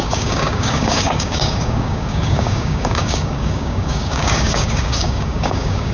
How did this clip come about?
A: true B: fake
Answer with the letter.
B